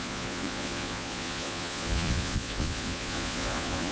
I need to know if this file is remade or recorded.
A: remade